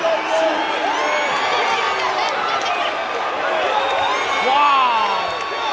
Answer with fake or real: real